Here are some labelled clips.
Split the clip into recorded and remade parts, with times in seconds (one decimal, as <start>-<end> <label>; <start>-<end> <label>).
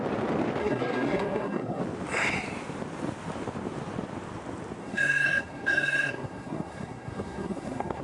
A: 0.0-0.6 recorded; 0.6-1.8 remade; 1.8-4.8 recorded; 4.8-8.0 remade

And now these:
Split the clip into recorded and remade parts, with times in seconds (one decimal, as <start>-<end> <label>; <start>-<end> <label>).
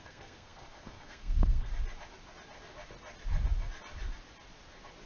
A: 0.0-1.7 remade; 1.7-5.1 recorded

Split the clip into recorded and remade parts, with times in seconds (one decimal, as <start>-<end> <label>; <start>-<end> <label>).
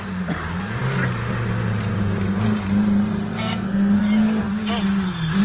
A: 0.0-3.3 recorded; 3.3-4.0 remade; 4.0-5.4 recorded